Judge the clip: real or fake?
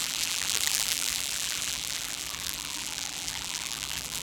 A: fake